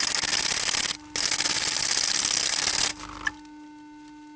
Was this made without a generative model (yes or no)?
yes